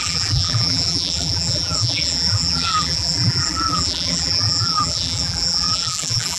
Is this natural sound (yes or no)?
no